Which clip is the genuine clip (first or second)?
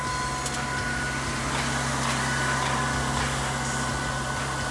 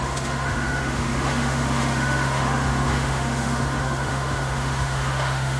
first